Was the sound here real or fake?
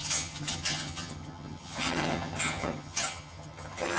fake